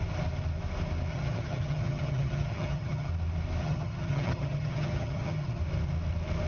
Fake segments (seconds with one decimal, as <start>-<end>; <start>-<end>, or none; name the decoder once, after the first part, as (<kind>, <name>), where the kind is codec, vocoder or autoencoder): 1.1-3.1 (vocoder, HiFi-GAN); 3.6-5.6